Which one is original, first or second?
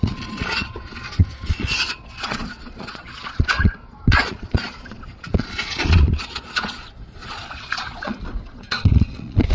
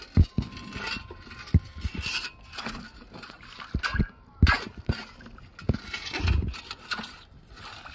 second